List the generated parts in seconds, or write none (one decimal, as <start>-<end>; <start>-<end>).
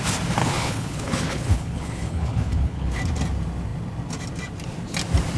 0.4-3.0